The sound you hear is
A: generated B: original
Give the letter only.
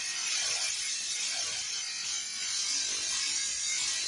B